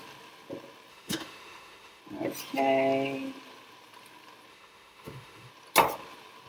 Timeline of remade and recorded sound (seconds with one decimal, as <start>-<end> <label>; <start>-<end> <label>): 0.0-0.9 recorded; 0.9-2.0 remade; 2.0-4.5 recorded; 4.5-5.5 remade; 5.5-6.5 recorded